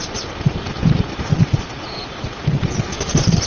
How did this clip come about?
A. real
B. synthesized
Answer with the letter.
A